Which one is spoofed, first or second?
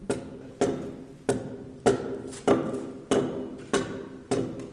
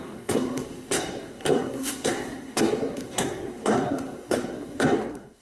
second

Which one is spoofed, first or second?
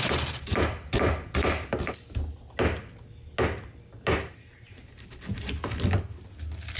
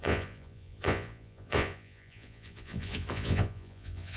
second